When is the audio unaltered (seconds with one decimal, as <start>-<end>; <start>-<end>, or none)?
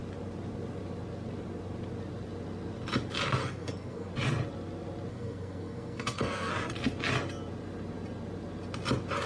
0.0-3.4; 4.1-5.1; 6.5-9.3